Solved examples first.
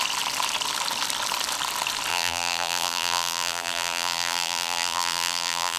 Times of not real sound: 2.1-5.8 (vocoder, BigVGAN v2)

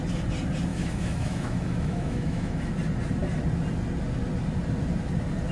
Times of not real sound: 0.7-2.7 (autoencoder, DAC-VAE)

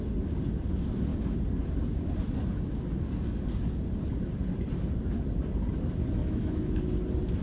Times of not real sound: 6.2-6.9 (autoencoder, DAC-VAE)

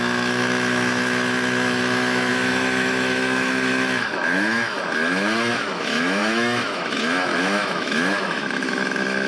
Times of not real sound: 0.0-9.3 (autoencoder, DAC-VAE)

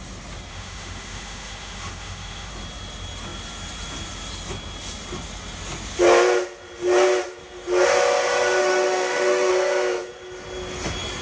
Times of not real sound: 0.5-2.5 (autoencoder, DAC-VAE); 8.6-9.5

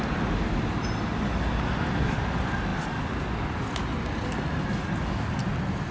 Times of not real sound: none

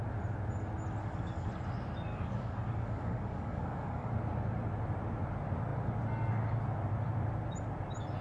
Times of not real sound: 1.0-1.5 (codec, DAC); 2.1-4.1

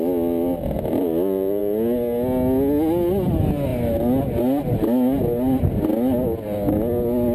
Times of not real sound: none